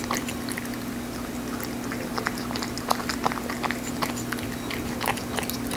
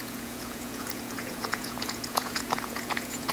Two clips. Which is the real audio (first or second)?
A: first